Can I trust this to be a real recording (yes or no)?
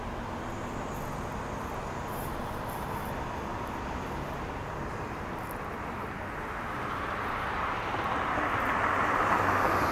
yes